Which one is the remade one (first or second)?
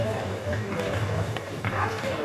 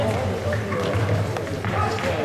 first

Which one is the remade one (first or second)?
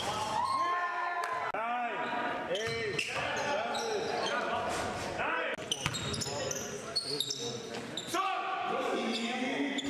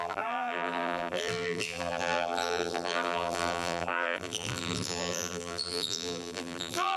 second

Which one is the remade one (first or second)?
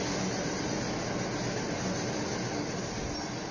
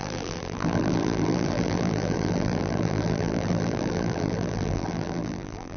second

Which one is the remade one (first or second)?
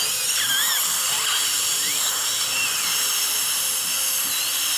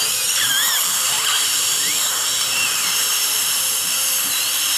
second